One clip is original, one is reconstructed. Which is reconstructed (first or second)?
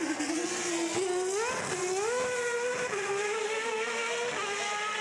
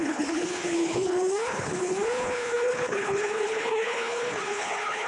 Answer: second